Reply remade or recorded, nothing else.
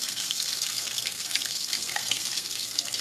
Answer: remade